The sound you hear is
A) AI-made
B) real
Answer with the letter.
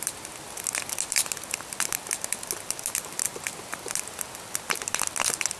B